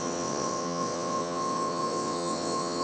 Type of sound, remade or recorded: remade